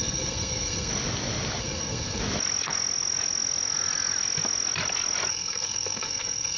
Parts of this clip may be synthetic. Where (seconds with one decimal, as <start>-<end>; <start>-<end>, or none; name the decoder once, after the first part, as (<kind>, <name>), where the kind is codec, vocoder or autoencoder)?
0.0-0.9 (codec, SNAC); 1.6-2.2; 5.3-6.6